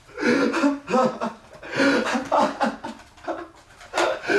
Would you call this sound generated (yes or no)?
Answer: no